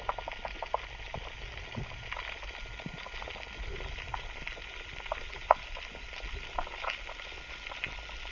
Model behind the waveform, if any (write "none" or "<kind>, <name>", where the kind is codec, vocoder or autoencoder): none